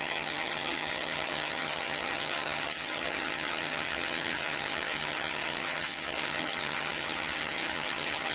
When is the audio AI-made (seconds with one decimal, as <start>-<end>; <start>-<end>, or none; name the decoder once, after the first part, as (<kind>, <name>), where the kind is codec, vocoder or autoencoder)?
0.0-8.3 (vocoder, HiFi-GAN)